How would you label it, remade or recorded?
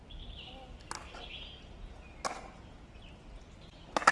recorded